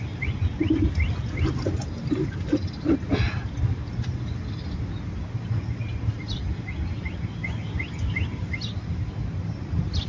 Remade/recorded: recorded